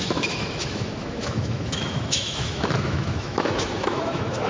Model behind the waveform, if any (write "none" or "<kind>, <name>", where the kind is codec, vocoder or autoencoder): autoencoder, DAC-VAE